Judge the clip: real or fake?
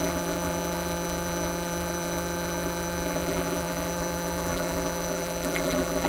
fake